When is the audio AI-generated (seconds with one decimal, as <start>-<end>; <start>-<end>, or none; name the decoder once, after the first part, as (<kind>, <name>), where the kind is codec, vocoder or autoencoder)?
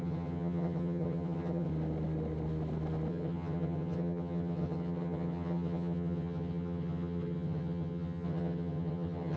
0.0-1.7 (vocoder, HiFi-GAN); 3.1-9.4